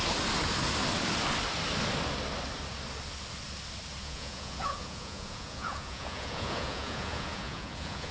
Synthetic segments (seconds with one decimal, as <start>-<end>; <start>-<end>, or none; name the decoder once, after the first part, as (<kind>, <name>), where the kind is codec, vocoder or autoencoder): 4.0-8.1 (vocoder, Vocos)